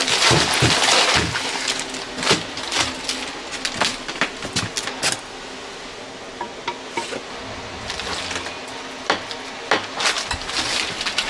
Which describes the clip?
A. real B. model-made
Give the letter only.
A